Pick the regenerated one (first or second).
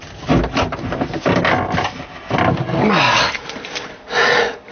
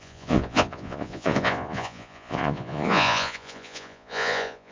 second